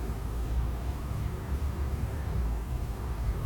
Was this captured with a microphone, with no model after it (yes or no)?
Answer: no